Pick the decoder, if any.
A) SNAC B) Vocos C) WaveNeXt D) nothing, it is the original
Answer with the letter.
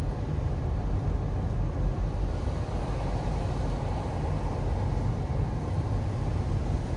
D